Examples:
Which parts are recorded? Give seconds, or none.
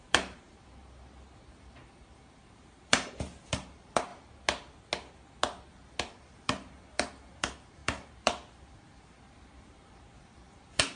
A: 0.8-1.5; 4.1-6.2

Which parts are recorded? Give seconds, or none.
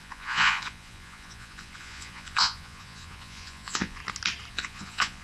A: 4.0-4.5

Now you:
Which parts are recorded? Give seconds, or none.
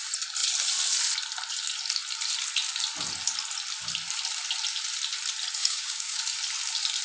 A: 0.0-5.6; 6.2-7.0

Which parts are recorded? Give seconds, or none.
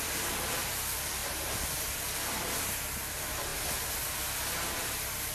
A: 3.5-4.8